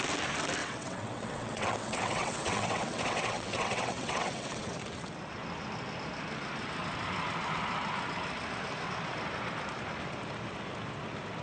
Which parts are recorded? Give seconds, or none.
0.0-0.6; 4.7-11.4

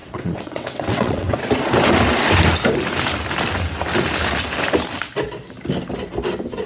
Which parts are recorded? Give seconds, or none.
1.4-6.7

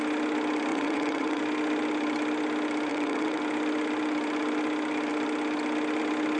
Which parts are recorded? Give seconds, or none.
0.0-0.7; 1.4-2.9; 3.4-6.4

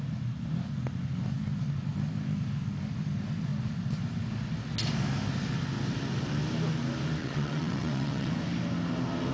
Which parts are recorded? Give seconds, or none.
0.0-7.2; 8.3-9.3

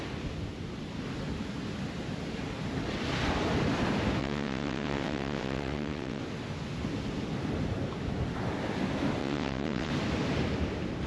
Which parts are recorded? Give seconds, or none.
0.0-4.2; 6.2-9.2; 9.9-11.1

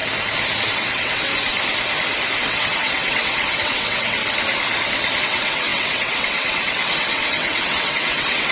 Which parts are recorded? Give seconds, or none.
0.0-0.7; 1.3-2.4; 4.2-5.2

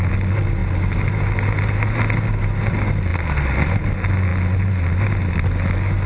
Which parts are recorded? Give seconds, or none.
0.0-6.1